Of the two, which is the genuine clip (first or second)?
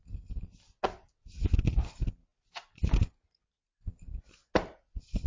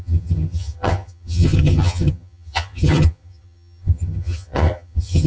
first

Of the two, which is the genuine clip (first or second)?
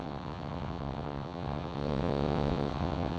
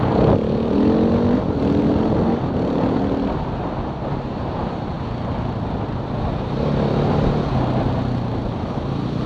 second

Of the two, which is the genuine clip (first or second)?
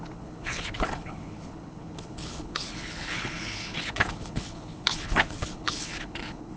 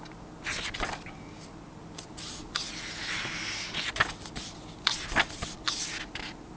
second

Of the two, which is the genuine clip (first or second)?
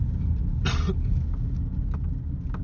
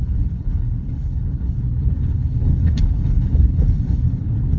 first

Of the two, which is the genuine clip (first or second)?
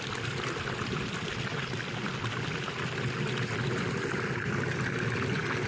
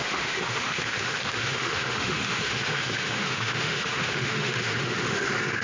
first